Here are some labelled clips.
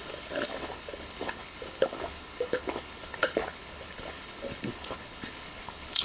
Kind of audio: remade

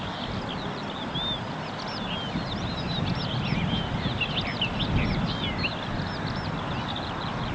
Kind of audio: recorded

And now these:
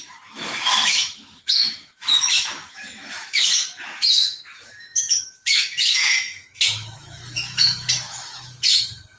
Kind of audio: remade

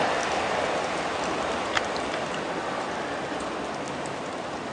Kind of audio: recorded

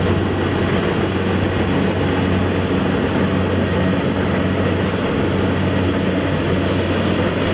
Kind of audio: recorded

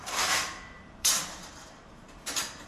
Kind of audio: remade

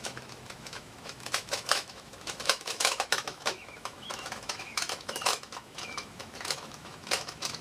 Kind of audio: remade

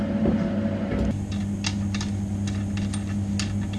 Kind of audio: recorded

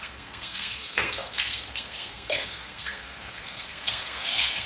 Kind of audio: remade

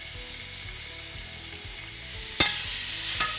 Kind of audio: recorded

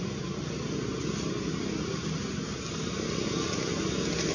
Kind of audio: recorded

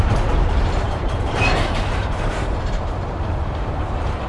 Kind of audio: remade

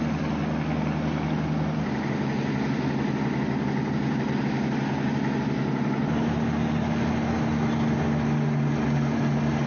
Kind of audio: recorded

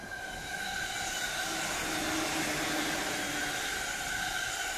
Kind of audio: recorded